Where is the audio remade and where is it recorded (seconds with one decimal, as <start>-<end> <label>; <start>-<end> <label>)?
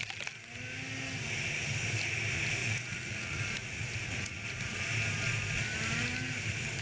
0.0-2.6 recorded; 2.6-4.8 remade; 4.8-6.8 recorded